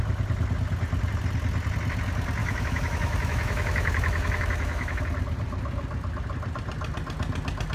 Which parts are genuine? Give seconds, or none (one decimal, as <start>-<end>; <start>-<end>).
0.0-2.4; 5.0-7.7